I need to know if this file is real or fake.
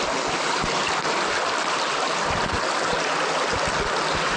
real